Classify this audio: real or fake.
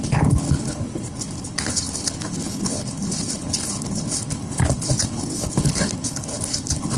fake